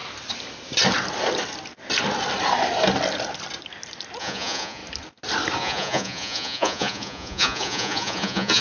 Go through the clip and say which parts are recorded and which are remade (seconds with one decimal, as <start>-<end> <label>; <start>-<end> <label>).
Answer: 0.0-4.2 recorded; 4.2-4.8 remade; 4.8-5.6 recorded; 5.6-8.6 remade